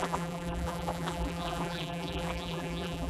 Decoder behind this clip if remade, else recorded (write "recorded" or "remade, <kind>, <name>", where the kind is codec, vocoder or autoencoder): remade, vocoder, BigVGAN v2